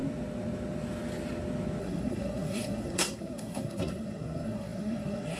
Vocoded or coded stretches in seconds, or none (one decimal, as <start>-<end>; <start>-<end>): 1.8-5.4